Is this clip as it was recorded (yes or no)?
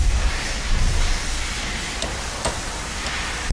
no